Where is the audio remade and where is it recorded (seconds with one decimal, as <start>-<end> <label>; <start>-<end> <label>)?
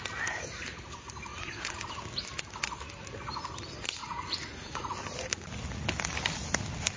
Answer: 0.0-1.3 recorded; 1.3-1.9 remade; 1.9-4.0 recorded; 4.0-4.9 remade; 4.9-7.0 recorded